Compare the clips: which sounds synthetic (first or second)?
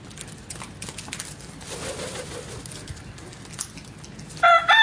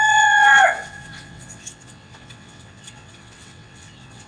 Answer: second